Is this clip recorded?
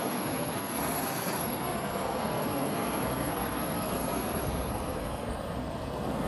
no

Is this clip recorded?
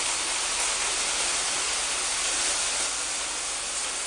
yes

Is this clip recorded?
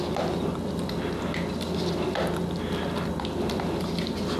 yes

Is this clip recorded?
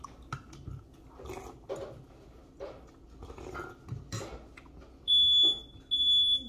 yes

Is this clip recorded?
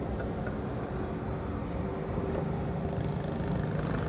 yes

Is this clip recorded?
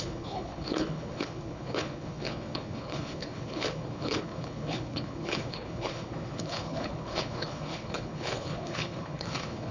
no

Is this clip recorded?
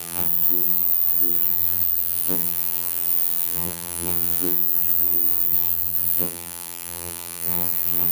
no